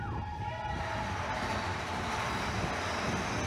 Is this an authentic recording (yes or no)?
yes